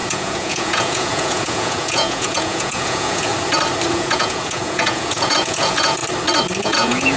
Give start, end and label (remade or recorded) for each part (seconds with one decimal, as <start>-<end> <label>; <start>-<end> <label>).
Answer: 0.0-3.3 remade; 3.3-3.9 recorded; 3.9-6.0 remade; 6.0-6.6 recorded; 6.6-7.2 remade